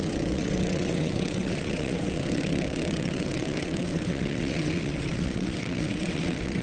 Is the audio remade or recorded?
remade